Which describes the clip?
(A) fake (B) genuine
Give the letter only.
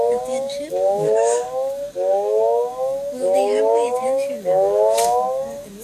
A